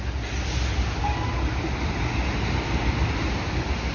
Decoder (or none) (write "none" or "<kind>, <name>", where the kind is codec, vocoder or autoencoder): none